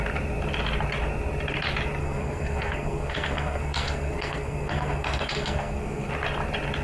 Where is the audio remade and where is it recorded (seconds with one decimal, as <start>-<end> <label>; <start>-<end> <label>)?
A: 0.0-2.0 recorded; 2.0-6.1 remade; 6.1-6.8 recorded